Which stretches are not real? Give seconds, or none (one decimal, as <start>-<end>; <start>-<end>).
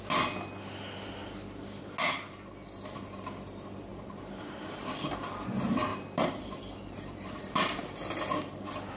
1.2-1.8; 3.9-4.9; 5.9-7.8